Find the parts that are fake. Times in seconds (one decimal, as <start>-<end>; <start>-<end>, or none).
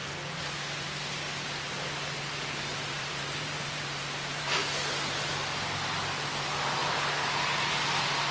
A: 2.9-4.6